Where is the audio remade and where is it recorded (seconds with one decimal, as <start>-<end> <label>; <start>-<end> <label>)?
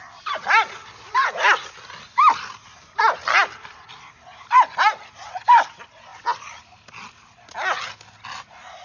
0.0-8.8 recorded